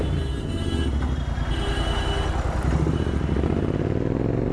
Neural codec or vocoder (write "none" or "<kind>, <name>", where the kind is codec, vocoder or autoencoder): none